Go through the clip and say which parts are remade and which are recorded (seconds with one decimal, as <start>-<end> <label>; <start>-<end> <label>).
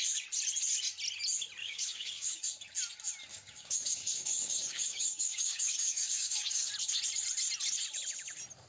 0.0-1.6 recorded; 1.6-2.4 remade; 2.4-3.3 recorded; 3.3-6.7 remade; 6.7-8.7 recorded